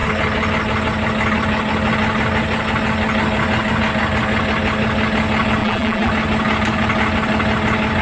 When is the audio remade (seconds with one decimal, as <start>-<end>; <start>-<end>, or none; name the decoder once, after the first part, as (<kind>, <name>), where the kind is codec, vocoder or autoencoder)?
5.6-6.1 (vocoder, BigVGAN v2)